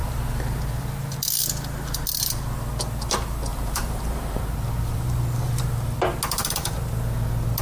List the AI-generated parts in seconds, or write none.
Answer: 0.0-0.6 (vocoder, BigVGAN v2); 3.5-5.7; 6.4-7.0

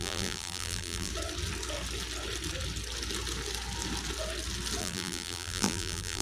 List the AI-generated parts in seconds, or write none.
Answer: 0.0-1.1 (vocoder, BigVGAN v2); 4.8-6.2

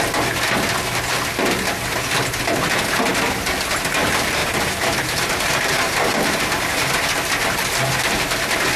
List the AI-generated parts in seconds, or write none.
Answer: 4.4-8.0 (vocoder, BigVGAN v2)

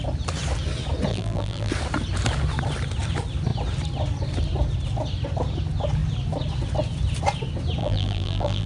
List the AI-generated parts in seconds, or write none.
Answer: 1.1-1.7 (vocoder, BigVGAN v2); 7.8-8.7

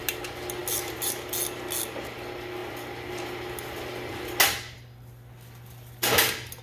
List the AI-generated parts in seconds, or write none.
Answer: 0.6-1.3 (vocoder, BigVGAN v2)

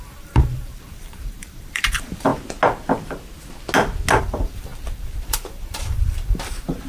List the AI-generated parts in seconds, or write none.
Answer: 0.0-2.3 (vocoder, BigVGAN v2); 4.2-6.9

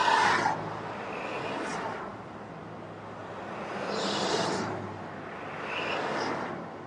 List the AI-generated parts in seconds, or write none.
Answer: 3.2-4.6 (vocoder, BigVGAN v2)

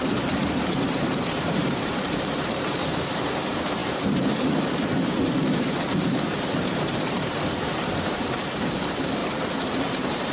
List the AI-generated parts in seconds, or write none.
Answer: 0.0-9.2 (vocoder, BigVGAN v2); 9.7-10.3